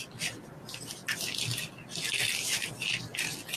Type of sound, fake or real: real